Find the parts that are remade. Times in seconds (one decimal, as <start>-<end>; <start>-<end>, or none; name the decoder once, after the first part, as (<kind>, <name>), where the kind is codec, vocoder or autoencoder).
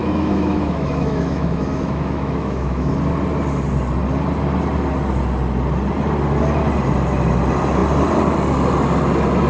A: 0.0-2.9 (autoencoder, DAC-VAE)